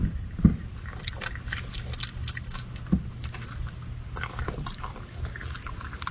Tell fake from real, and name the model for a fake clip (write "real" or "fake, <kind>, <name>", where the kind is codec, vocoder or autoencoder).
real